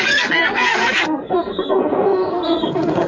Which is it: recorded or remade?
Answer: remade